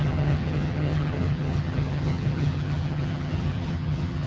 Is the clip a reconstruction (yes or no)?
yes